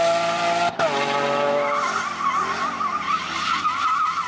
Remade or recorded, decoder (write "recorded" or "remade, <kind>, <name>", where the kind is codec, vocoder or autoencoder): recorded